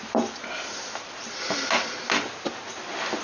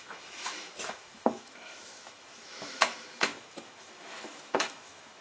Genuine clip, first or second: first